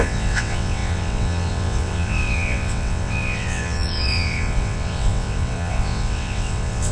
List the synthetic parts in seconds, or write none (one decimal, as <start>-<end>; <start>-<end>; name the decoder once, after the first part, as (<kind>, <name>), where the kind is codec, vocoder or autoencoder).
0.0-6.9 (vocoder, WaveNeXt)